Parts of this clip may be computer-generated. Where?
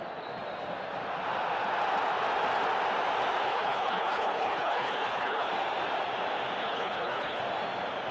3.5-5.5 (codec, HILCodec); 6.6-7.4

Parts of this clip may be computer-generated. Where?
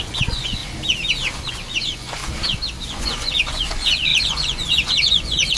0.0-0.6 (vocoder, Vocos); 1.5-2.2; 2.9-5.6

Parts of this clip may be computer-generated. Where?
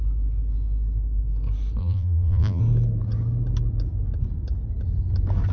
1.8-2.6 (vocoder, BigVGAN v2)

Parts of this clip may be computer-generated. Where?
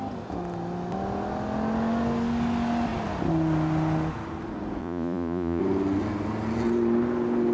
4.8-5.6 (vocoder, Vocos)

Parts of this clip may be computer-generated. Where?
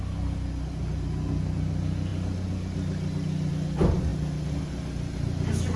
none